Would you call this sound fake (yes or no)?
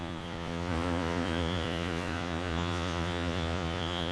yes